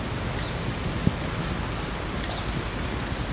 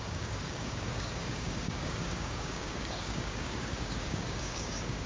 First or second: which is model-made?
second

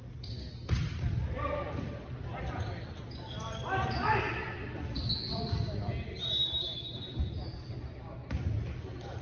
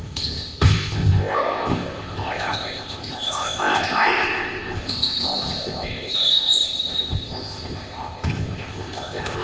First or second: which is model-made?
second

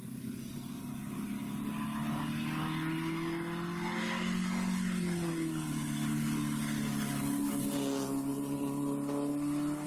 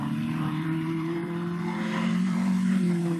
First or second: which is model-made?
second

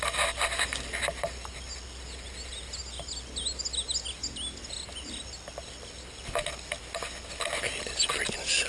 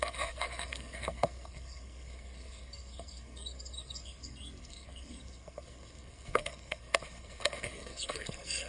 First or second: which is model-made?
second